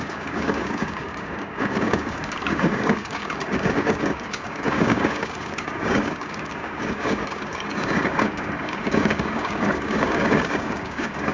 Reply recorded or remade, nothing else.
remade